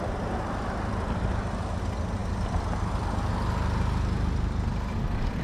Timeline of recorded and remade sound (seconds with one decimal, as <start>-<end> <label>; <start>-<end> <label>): 0.0-5.4 recorded